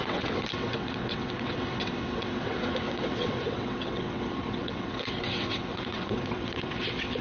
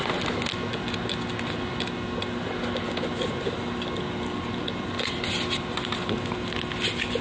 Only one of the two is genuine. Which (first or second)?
second